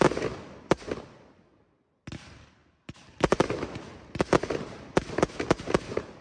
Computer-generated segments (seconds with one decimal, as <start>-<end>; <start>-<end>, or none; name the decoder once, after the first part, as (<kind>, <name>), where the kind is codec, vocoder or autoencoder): none